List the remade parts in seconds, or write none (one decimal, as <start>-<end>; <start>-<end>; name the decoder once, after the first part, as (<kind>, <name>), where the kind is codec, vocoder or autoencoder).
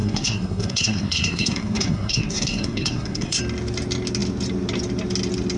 0.0-3.4 (codec, SNAC)